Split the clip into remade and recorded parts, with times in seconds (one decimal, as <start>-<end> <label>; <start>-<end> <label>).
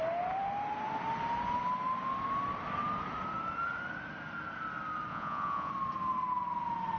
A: 0.0-5.1 recorded; 5.1-5.7 remade; 5.7-7.0 recorded